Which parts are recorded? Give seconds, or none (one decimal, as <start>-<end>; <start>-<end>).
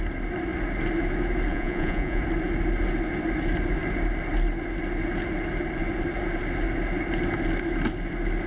0.0-1.5; 2.2-8.5